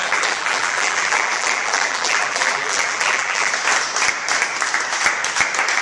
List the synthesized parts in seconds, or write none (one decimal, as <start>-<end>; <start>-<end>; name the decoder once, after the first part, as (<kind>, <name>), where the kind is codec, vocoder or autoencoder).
0.0-3.5 (vocoder, BigVGAN v2)